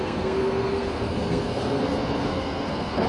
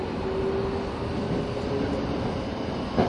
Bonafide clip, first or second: second